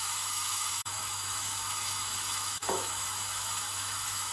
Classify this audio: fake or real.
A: fake